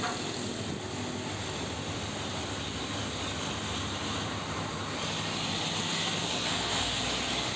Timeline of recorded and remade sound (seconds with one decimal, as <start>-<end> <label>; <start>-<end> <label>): 0.0-5.8 recorded; 5.8-7.0 remade; 7.0-7.6 recorded